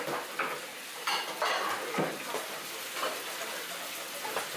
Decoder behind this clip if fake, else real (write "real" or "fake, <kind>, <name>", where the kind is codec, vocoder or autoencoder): real